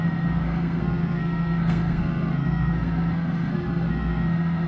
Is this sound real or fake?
fake